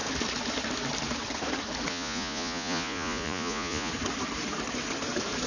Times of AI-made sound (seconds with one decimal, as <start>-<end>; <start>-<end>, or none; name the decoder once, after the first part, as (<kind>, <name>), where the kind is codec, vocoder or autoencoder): 1.9-3.9 (vocoder, Vocos)